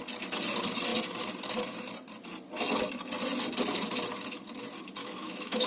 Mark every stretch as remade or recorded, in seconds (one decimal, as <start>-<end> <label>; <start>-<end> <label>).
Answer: 0.0-5.0 recorded; 5.0-5.7 remade

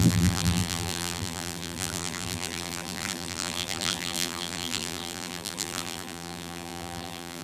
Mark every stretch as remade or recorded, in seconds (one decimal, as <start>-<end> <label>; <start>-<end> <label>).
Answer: 0.0-7.4 remade

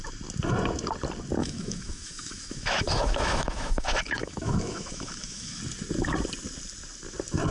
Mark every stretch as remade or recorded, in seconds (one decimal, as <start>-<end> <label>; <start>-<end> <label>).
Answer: 0.0-1.4 recorded; 1.4-5.6 remade; 5.6-7.5 recorded

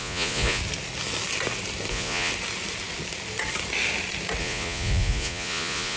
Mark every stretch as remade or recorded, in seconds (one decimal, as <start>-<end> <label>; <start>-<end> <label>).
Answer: 0.0-0.6 remade; 0.6-1.9 recorded; 1.9-2.3 remade; 2.3-4.4 recorded; 4.4-6.0 remade

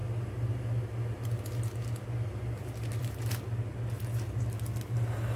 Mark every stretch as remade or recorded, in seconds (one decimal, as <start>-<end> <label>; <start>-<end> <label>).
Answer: 0.0-5.4 recorded

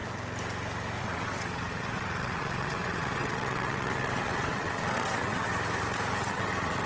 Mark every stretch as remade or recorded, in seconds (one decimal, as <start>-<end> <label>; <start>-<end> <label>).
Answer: 0.0-1.0 recorded; 1.0-5.5 remade; 5.5-6.1 recorded; 6.1-6.9 remade

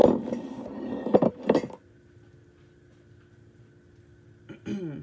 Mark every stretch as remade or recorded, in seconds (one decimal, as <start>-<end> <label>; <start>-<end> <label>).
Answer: 0.0-5.0 recorded